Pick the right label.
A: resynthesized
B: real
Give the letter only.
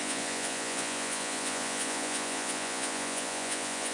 A